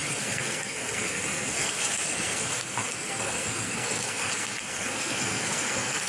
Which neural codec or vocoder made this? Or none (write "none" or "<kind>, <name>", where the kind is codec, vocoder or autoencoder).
codec, SNAC